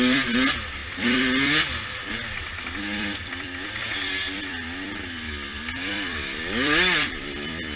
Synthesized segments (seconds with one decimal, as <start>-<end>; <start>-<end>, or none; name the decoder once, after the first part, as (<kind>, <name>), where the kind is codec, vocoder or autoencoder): 0.0-7.8 (vocoder, BigVGAN v2)